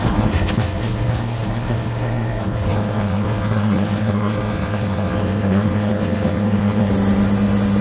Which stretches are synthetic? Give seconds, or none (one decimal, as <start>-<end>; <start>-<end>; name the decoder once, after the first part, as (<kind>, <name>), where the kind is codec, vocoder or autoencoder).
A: 0.0-6.9 (codec, SNAC)